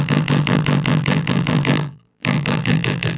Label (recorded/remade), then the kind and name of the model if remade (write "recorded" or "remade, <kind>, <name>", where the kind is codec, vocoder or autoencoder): remade, vocoder, BigVGAN v2